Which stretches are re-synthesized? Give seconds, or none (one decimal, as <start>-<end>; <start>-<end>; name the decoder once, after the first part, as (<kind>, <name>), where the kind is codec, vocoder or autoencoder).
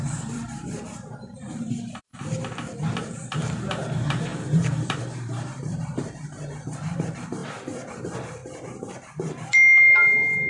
0.0-2.1 (vocoder, BigVGAN v2); 3.0-7.4; 7.9-8.4